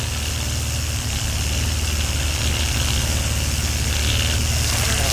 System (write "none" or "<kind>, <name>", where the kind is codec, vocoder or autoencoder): none